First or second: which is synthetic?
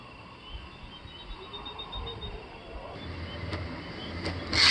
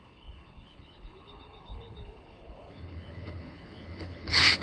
second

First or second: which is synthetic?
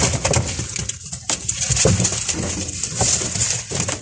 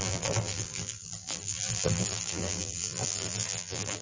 second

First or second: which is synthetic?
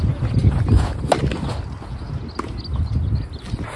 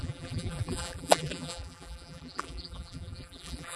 second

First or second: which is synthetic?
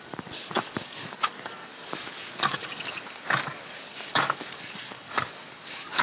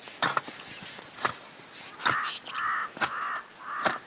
first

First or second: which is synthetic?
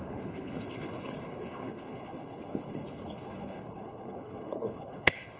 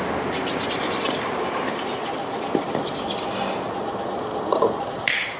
first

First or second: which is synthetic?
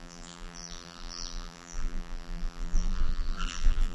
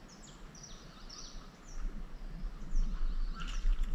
first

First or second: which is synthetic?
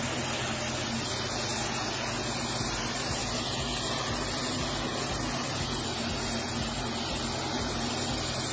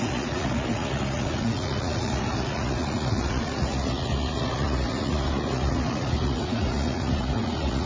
second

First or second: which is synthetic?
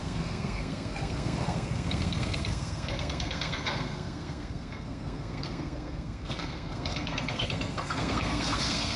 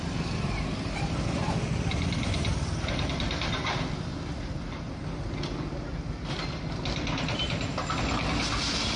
first